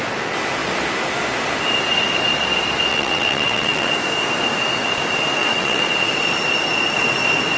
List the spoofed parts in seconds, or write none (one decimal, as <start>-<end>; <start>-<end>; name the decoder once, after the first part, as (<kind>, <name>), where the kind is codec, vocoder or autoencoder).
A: 2.9-3.9 (vocoder, WaveNeXt); 5.4-5.9